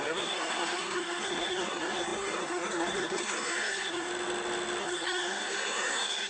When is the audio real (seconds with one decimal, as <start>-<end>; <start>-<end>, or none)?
4.1-4.8